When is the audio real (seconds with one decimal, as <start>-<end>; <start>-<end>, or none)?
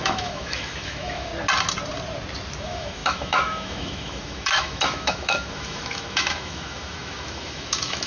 1.3-2.6